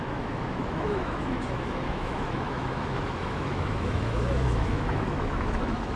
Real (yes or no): no